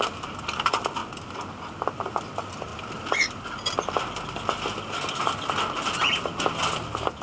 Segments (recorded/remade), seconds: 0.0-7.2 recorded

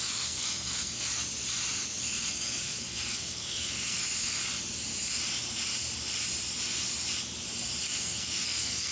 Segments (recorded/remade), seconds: 0.0-1.1 remade; 1.1-2.0 recorded; 2.0-4.4 remade; 4.4-7.8 recorded; 7.8-8.9 remade

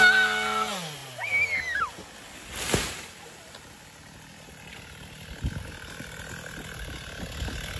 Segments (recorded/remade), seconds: 0.0-7.8 recorded

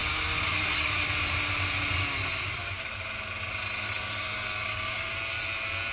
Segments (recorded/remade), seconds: 0.0-1.1 remade; 1.1-3.8 recorded; 3.8-5.1 remade; 5.1-5.9 recorded

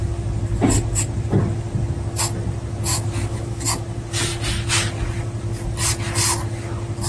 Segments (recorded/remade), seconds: 0.0-2.9 recorded; 2.9-3.7 remade; 3.7-7.1 recorded

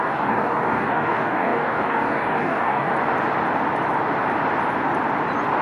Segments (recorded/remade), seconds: 0.0-2.9 remade; 2.9-5.6 recorded

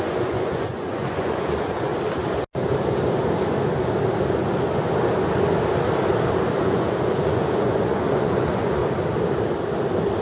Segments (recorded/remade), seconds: 0.0-1.9 remade; 1.9-6.6 recorded; 6.6-8.8 remade; 8.8-10.2 recorded